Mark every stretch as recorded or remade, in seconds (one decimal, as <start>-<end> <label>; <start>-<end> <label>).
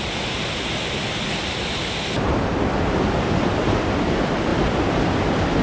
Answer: 0.0-5.6 recorded